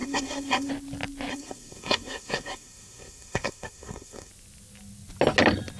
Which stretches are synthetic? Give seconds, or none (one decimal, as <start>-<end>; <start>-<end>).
0.0-0.7; 1.3-4.3